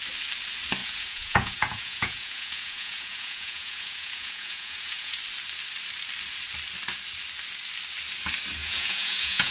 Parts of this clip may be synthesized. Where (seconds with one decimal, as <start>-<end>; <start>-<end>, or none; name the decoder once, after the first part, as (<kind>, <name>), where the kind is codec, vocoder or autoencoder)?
0.8-5.2 (vocoder, Vocos); 8.6-9.5